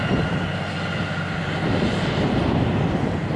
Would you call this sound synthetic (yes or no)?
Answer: no